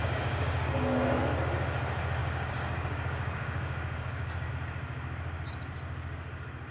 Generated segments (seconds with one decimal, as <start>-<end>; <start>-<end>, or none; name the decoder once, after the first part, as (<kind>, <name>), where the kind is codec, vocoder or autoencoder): 0.0-1.2 (codec, DAC); 2.2-4.5